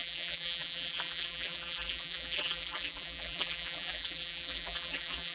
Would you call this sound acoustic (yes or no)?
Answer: no